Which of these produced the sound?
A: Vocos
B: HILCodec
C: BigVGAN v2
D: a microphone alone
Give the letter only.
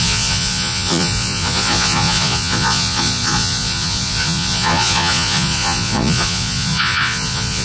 A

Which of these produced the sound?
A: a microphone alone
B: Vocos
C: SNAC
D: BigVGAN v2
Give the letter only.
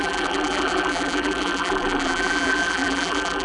D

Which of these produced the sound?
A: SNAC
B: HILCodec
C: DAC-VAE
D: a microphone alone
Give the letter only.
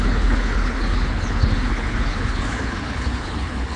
B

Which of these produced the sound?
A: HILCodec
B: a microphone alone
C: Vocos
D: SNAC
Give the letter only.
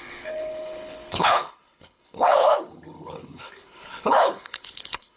A